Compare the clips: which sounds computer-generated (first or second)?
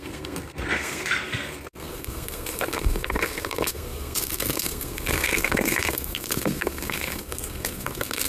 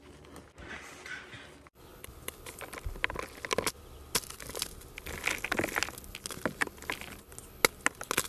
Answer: first